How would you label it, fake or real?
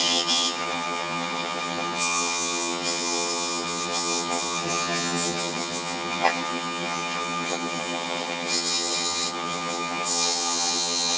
fake